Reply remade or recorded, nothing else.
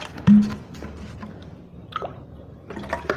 recorded